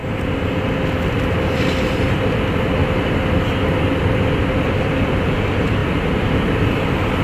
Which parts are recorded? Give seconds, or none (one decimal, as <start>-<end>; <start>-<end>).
0.0-7.2